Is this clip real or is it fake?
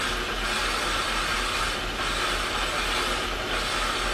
real